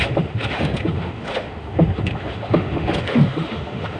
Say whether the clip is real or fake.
fake